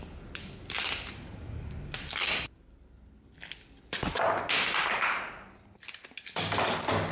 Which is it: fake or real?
real